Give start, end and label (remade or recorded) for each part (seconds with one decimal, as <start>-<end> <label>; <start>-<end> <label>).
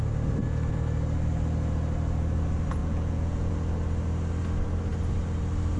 0.0-2.8 recorded; 2.8-3.5 remade; 3.5-5.8 recorded